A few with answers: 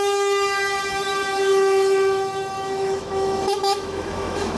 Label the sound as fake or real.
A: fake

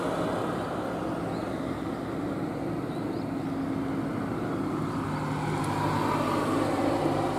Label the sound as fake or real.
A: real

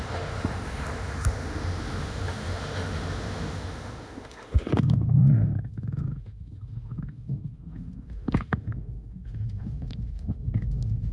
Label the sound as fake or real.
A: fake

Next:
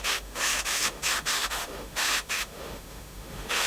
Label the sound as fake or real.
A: fake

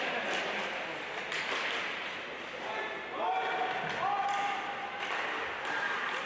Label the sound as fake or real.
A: real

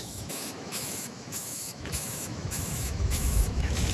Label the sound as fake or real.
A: fake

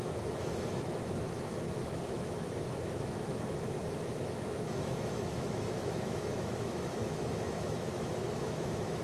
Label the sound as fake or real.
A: fake